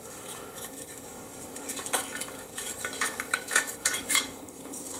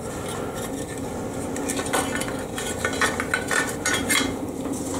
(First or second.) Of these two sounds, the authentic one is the second